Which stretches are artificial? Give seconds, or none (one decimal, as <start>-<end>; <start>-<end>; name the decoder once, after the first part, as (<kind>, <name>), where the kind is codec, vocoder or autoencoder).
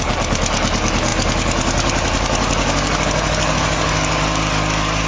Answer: 0.0-5.1 (codec, DAC)